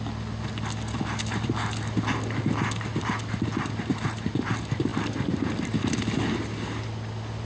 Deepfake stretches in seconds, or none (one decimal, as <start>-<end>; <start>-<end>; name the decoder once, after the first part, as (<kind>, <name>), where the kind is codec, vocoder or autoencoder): none